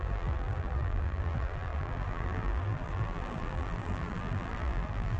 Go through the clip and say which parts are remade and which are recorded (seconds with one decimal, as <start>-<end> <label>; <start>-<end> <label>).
0.0-5.2 remade